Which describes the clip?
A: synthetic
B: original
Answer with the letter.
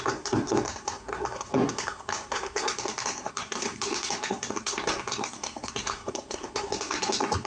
A